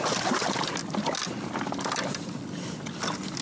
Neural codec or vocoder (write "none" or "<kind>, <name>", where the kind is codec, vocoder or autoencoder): none